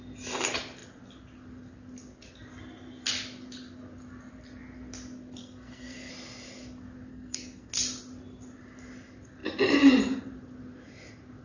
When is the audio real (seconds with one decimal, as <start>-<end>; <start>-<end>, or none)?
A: 0.0-5.4; 6.1-7.1; 7.7-11.4